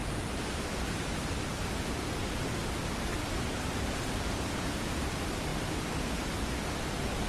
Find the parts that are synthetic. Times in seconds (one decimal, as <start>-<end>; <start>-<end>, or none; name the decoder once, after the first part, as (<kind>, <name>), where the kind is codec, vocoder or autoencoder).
1.5-2.6 (vocoder, BigVGAN v2); 3.1-4.9